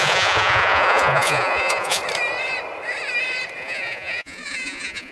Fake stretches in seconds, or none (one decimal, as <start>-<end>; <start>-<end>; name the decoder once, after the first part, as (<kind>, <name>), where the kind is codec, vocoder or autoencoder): 0.0-2.0 (vocoder, Vocos); 3.6-5.1